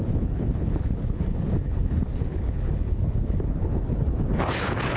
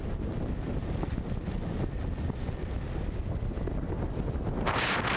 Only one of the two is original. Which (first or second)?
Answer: second